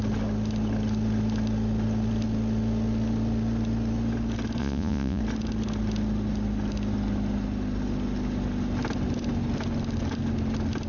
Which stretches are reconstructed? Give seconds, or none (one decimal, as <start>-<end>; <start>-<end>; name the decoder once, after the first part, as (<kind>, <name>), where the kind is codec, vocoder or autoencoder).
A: 4.6-5.2 (vocoder, Vocos)